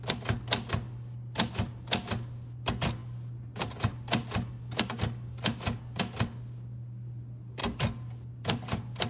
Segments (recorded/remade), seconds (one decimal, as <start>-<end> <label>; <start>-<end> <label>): 0.0-9.1 recorded